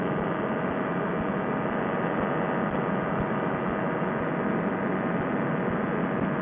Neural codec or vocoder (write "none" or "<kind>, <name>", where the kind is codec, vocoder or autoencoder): none